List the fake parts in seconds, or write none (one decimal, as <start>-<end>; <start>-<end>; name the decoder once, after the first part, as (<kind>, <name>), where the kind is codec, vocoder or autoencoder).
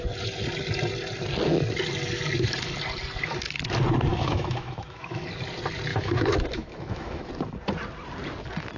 4.1-5.2 (autoencoder, DAC-VAE); 5.9-7.3